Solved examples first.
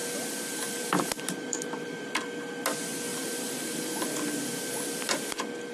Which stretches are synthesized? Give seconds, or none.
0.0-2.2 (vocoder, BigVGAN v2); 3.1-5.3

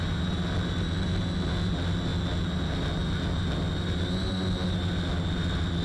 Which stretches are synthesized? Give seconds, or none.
none

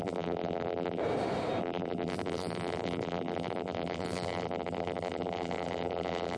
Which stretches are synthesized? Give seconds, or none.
0.0-1.0 (vocoder, BigVGAN v2); 1.6-6.4

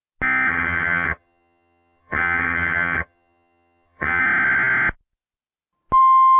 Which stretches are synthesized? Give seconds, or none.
0.5-4.2 (vocoder, HiFi-GAN)

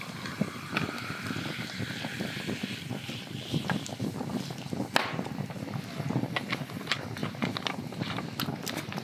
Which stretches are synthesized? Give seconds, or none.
none

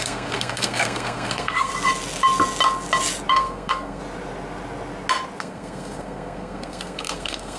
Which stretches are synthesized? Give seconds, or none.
0.0-1.7 (codec, SNAC); 3.3-4.0; 5.4-7.6